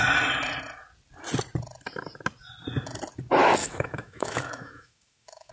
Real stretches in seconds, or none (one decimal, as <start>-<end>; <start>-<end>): 0.0-3.6